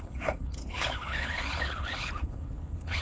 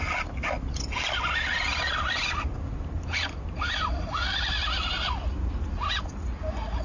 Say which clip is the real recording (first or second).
second